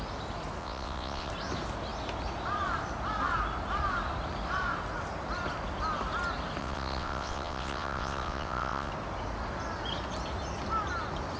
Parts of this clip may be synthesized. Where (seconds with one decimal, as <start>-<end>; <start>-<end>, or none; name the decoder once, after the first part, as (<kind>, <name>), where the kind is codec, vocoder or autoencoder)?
0.6-1.3 (vocoder, WaveNeXt); 6.6-8.9